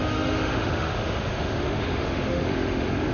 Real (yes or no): no